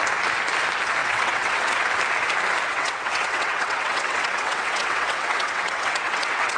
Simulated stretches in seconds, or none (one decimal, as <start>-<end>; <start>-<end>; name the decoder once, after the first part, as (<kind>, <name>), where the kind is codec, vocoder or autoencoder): 1.0-1.7 (vocoder, WaveNeXt); 2.7-6.6